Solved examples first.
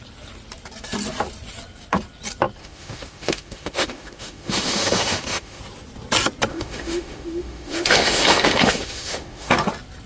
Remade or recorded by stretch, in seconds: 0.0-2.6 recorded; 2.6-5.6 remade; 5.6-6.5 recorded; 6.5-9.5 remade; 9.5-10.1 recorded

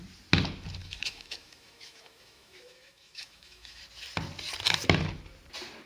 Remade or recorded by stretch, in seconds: 0.0-0.8 recorded; 0.8-3.8 remade; 3.8-5.9 recorded